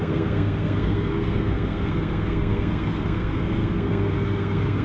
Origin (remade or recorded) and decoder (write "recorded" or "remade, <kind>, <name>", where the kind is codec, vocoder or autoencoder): remade, codec, SNAC